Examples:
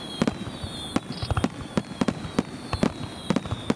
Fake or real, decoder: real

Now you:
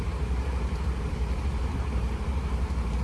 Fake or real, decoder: fake, vocoder, BigVGAN v2